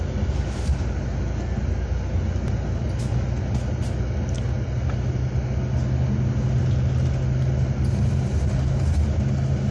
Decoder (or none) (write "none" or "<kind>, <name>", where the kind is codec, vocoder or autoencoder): none